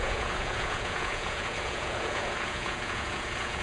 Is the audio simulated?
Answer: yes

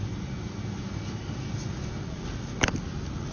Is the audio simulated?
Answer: no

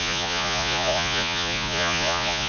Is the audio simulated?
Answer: yes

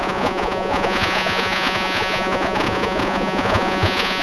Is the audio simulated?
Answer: yes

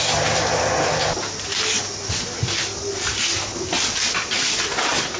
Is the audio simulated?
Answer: no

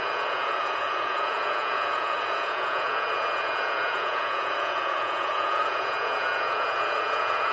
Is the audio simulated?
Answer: yes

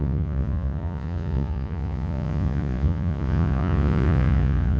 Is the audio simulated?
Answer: yes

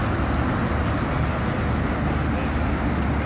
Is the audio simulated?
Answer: no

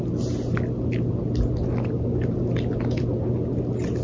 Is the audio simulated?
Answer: no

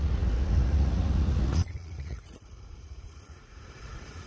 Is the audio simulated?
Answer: yes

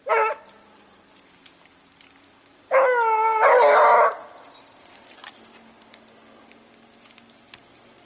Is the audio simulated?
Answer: no